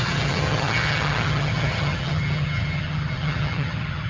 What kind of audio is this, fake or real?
fake